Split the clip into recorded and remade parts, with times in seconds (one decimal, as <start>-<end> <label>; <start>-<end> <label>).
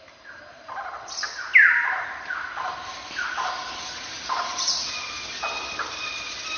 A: 0.0-6.6 recorded